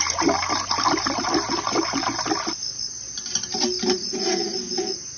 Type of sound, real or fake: real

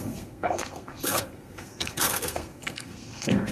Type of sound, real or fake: fake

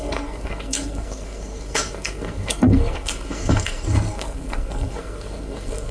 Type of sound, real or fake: fake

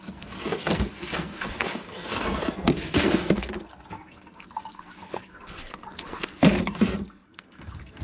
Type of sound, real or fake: fake